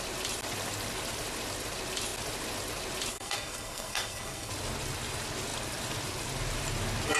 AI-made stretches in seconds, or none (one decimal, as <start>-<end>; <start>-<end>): 3.1-4.5